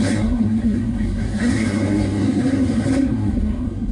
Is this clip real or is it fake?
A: fake